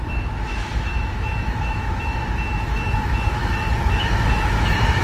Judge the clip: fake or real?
fake